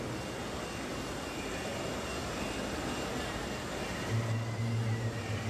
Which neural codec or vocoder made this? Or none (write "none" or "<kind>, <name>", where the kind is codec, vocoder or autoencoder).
none